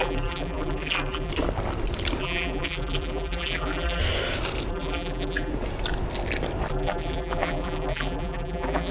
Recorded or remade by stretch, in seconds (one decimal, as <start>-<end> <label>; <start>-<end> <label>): 0.0-1.3 remade; 1.3-2.2 recorded; 2.2-4.0 remade; 4.0-4.7 recorded; 4.7-5.5 remade; 5.5-6.7 recorded; 6.7-8.9 remade